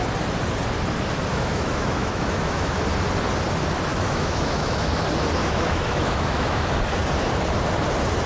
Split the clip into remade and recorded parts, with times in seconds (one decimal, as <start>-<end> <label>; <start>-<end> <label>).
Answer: 0.0-1.3 recorded; 1.3-2.8 remade; 2.8-3.9 recorded; 3.9-4.9 remade; 4.9-5.4 recorded; 5.4-6.8 remade; 6.8-8.3 recorded